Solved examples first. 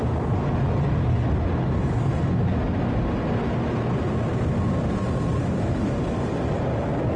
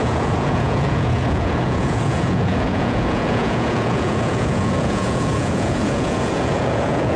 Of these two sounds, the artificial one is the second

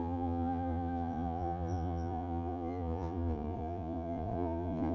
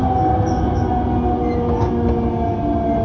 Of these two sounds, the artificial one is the first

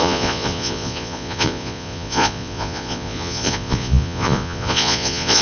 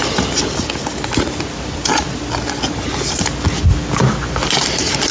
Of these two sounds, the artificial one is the first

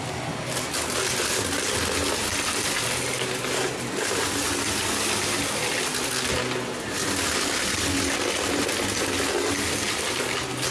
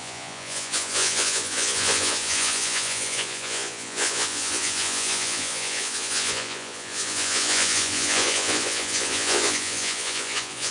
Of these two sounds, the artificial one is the second